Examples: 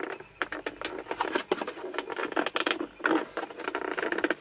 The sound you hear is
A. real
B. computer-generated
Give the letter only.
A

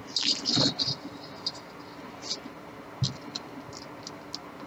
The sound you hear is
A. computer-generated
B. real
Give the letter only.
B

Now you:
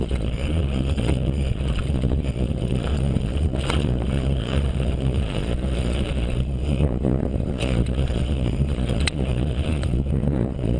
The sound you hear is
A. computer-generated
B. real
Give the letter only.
A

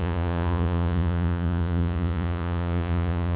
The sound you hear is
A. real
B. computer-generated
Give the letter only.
B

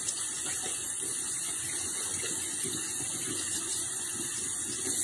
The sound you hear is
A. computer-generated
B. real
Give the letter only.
A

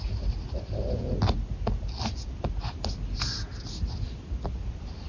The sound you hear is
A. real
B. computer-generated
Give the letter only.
A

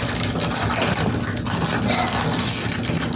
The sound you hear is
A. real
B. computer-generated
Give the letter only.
A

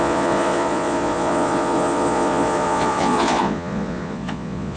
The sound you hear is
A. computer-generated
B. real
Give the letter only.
A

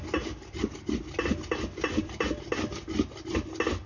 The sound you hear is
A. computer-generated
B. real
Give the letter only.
B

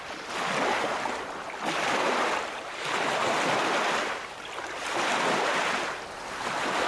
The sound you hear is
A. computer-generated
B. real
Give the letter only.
B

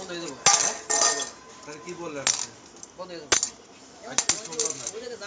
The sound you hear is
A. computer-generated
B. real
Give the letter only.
B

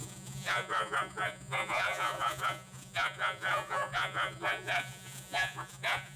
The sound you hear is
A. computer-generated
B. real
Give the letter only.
A